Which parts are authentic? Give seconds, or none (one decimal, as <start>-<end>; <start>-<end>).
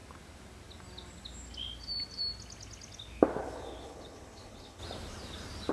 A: 0.0-3.4; 4.8-5.7